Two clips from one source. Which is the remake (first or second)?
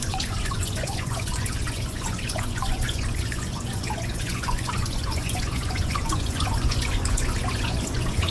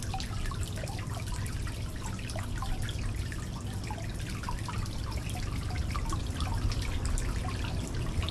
first